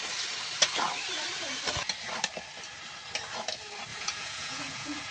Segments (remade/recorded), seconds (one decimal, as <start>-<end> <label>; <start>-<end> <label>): 0.0-3.9 recorded; 3.9-5.1 remade